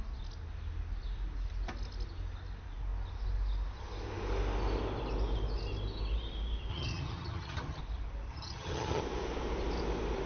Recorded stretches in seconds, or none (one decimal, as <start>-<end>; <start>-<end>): 0.0-6.7; 7.8-8.3; 9.0-10.3